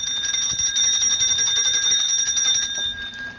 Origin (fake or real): fake